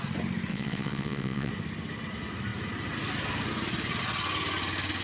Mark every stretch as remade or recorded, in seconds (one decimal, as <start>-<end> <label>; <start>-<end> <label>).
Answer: 0.0-0.5 recorded; 0.5-1.5 remade; 1.5-5.0 recorded